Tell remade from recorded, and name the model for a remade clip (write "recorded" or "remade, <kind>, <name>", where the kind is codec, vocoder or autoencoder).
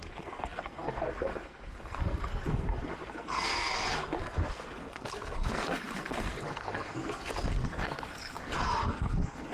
remade, codec, SNAC